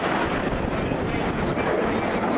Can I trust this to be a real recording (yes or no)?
yes